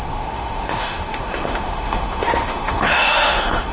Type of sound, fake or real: fake